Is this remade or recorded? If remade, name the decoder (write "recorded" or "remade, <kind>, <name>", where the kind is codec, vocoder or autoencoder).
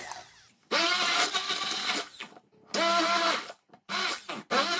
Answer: recorded